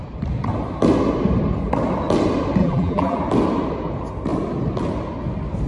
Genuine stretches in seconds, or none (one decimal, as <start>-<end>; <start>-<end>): 0.0-2.6; 3.2-5.7